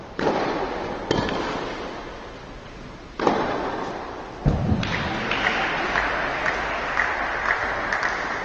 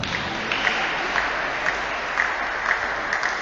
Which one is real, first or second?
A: second